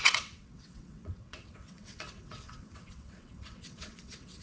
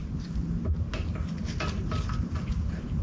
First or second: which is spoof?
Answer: first